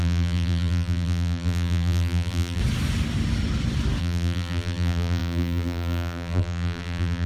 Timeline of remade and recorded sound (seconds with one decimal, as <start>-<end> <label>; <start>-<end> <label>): 0.0-2.6 remade; 2.6-4.0 recorded; 4.0-7.3 remade